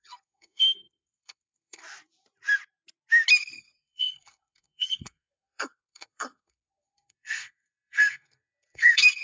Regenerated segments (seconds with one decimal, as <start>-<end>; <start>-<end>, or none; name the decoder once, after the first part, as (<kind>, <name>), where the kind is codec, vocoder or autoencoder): 0.0-1.8 (codec, SNAC); 3.3-9.2